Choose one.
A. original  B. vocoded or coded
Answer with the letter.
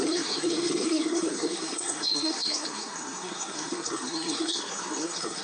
B